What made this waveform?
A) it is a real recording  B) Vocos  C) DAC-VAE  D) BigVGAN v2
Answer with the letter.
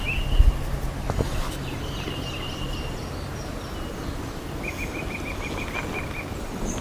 A